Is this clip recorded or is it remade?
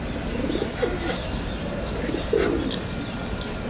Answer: recorded